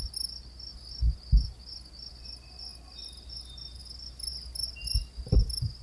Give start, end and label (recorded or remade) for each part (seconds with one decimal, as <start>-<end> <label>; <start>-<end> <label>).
0.0-5.8 recorded